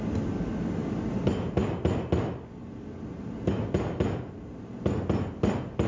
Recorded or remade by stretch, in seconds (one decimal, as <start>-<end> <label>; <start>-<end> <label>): 0.0-5.9 recorded